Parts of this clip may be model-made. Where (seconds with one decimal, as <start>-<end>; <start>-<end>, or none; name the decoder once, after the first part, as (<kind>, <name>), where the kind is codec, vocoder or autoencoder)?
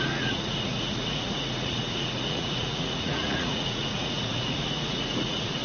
0.0-5.6 (vocoder, Vocos)